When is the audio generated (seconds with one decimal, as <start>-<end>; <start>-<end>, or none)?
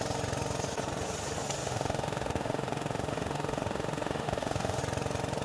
1.6-4.8